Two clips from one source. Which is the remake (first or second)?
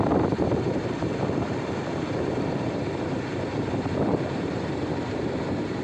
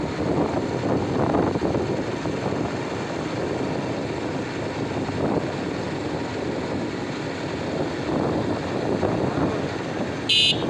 first